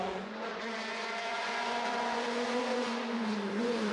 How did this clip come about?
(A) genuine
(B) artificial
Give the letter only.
B